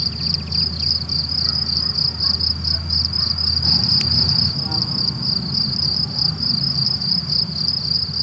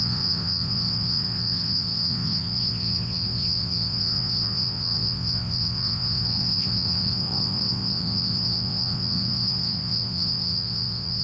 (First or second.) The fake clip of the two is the second